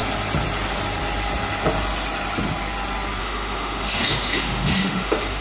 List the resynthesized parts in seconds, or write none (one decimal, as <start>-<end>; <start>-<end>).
3.2-5.4